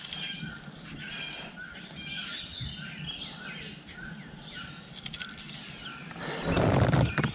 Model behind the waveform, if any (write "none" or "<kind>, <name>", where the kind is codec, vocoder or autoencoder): none